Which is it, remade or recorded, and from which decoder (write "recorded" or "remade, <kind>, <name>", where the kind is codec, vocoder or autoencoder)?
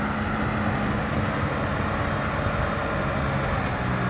recorded